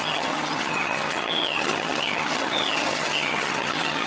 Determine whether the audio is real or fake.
fake